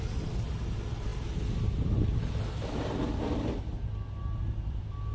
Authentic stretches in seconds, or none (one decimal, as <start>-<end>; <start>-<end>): 0.0-5.1